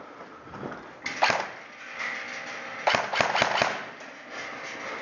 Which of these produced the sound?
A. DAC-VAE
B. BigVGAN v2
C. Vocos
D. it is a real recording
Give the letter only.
D